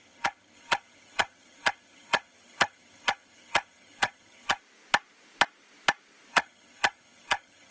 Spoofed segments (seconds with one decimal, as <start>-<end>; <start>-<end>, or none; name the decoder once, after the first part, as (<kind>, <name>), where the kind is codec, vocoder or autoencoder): 0.0-4.6 (vocoder, HiFi-GAN); 6.3-7.7